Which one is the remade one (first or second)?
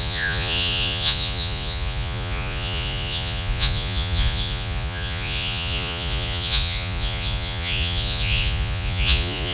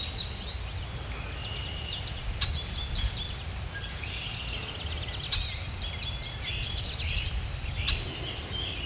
first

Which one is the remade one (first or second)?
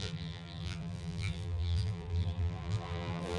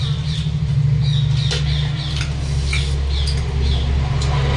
first